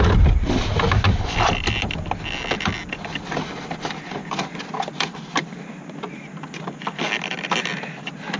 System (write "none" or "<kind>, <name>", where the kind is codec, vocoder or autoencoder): none